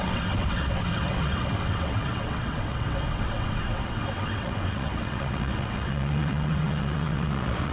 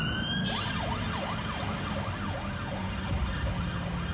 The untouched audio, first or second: second